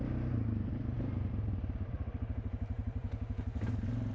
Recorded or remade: remade